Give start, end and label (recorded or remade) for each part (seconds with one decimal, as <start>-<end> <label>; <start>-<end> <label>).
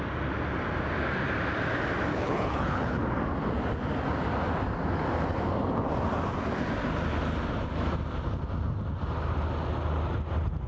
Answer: 0.0-2.1 recorded; 2.1-3.0 remade; 3.0-10.7 recorded